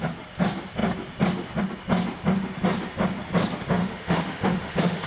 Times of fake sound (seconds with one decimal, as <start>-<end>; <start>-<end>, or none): 3.8-5.1